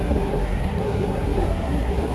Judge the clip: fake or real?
fake